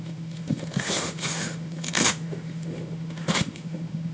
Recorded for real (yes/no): no